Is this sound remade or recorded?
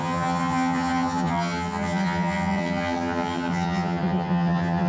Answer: remade